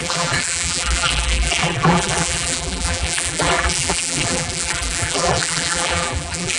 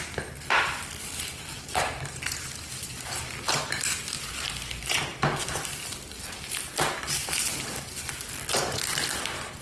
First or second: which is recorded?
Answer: second